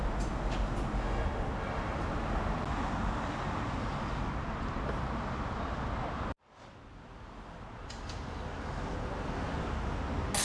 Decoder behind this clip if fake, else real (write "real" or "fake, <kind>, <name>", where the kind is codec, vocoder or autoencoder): real